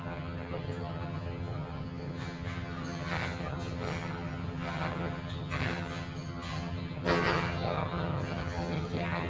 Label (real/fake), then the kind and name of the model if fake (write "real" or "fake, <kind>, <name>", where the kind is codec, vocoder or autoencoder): fake, vocoder, HiFi-GAN